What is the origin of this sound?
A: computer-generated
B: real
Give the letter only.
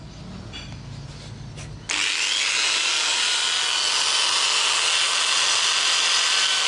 B